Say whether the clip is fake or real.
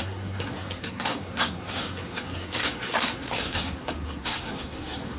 fake